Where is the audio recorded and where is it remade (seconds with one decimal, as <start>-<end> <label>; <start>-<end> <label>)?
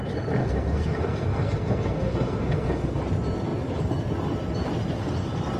0.0-0.4 recorded; 0.4-3.0 remade; 3.0-5.6 recorded